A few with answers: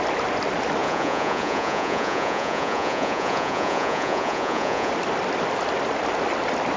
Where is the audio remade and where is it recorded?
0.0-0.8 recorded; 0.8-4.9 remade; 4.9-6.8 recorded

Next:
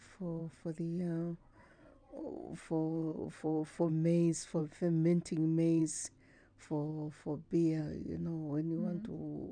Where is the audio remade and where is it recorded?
0.0-0.4 recorded; 0.4-3.9 remade; 3.9-9.5 recorded